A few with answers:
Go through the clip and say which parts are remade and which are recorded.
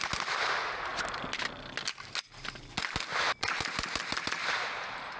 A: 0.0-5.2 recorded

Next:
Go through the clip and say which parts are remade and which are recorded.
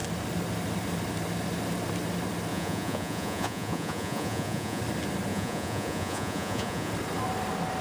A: 0.0-2.5 recorded; 2.5-4.8 remade; 4.8-5.3 recorded; 5.3-6.9 remade; 6.9-7.8 recorded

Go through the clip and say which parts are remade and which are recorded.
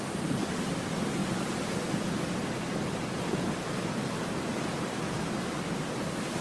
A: 0.0-6.4 recorded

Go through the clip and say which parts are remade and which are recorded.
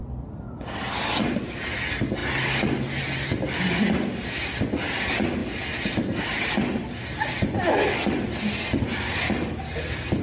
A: 0.0-10.2 recorded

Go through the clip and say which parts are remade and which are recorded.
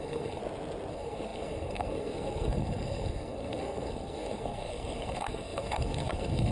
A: 0.0-0.4 remade; 0.4-0.9 recorded; 0.9-6.5 remade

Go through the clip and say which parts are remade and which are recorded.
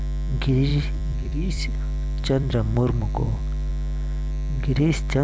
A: 0.0-0.7 recorded; 0.7-3.7 remade; 3.7-5.2 recorded